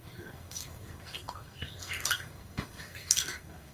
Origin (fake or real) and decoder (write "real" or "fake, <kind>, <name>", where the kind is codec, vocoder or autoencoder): fake, codec, SNAC